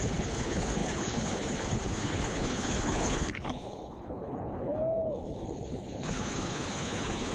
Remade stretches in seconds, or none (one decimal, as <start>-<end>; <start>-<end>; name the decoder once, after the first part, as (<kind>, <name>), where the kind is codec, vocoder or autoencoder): 0.0-7.3 (codec, HILCodec)